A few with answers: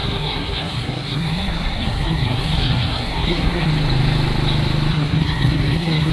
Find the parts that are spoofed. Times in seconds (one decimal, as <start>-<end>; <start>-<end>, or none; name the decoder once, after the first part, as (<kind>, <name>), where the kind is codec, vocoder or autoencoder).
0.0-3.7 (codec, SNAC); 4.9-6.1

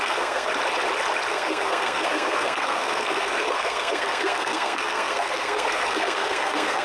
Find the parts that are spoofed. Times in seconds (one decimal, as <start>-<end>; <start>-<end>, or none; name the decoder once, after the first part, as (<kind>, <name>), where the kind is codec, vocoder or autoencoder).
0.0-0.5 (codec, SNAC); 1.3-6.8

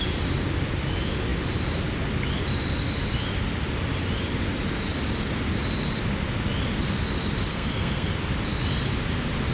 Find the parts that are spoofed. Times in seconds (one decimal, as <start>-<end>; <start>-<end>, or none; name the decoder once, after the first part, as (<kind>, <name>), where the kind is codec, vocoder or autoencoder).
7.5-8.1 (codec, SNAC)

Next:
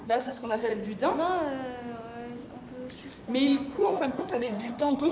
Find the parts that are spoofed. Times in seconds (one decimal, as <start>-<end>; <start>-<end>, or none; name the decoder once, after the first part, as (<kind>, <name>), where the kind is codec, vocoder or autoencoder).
0.0-0.7 (codec, SNAC); 3.8-5.1

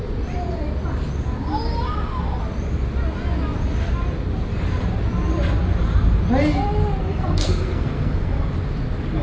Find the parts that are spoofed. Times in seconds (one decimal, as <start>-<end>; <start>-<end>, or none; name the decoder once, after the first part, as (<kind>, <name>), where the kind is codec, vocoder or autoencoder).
7.0-8.5 (codec, SNAC)

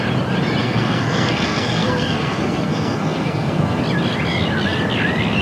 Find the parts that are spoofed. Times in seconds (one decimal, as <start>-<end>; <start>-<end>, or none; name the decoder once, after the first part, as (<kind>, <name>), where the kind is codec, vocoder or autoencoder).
0.6-3.8 (codec, SNAC)

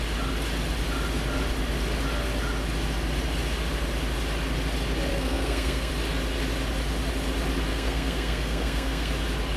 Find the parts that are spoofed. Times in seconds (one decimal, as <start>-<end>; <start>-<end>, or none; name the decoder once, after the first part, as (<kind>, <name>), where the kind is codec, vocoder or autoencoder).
5.1-5.9 (codec, SNAC); 7.7-9.1

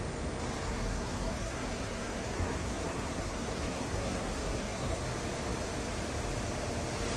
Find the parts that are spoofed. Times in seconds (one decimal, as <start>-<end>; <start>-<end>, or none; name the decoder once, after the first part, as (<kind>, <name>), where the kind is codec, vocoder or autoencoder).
0.7-5.0 (codec, SNAC)